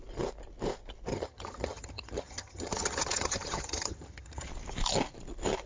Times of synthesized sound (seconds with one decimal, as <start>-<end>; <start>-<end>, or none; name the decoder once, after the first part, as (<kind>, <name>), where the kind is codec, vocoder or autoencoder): 1.1-4.5 (vocoder, HiFi-GAN)